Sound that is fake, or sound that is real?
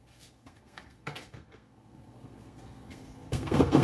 fake